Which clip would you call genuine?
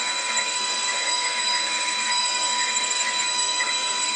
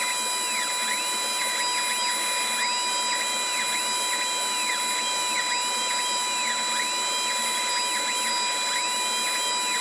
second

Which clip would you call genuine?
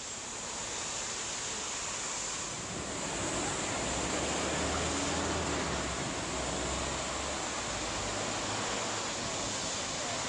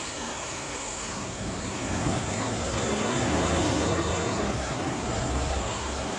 first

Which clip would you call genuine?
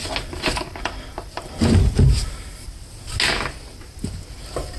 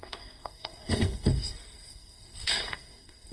first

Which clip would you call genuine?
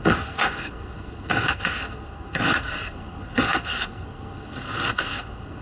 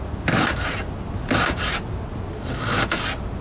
second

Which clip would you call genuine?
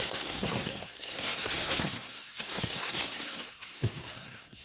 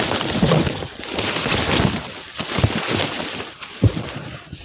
second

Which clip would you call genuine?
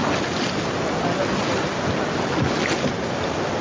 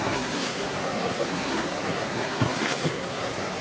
first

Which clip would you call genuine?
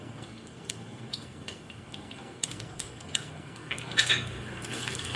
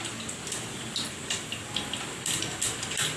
second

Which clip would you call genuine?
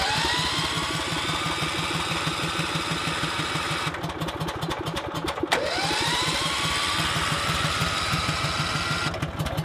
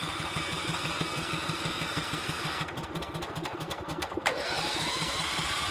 first